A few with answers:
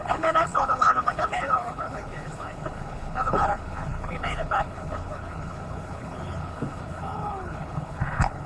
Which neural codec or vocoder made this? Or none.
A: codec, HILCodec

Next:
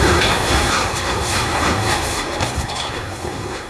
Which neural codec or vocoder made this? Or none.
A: codec, SNAC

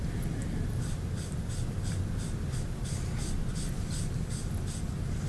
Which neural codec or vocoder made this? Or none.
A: vocoder, BigVGAN v2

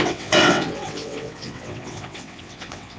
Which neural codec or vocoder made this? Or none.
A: vocoder, WaveNeXt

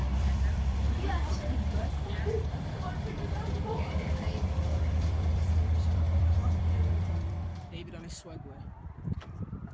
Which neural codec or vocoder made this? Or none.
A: vocoder, BigVGAN v2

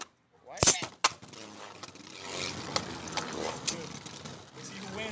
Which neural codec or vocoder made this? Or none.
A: none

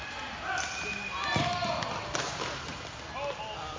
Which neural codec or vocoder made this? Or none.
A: none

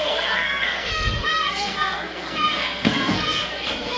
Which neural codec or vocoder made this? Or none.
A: codec, SNAC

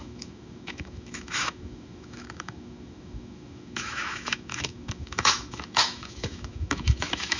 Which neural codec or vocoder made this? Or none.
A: autoencoder, DAC-VAE